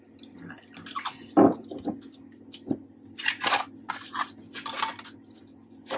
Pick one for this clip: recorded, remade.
recorded